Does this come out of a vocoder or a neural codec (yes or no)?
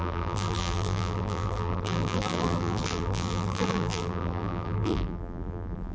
yes